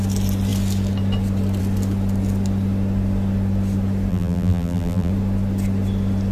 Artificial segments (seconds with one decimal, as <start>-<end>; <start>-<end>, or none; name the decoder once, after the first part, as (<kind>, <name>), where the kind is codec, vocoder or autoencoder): 4.1-5.1 (vocoder, BigVGAN v2)